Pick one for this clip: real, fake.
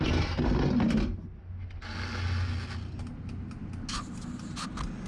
real